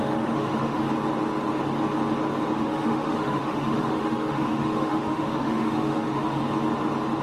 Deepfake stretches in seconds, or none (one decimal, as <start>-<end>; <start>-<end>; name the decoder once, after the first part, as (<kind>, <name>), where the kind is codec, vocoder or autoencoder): 0.0-0.8 (autoencoder, DAC-VAE); 2.6-6.4